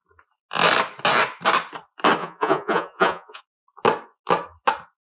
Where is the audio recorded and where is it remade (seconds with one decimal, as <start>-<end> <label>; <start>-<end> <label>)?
0.0-2.2 recorded; 2.2-3.4 remade; 3.4-5.0 recorded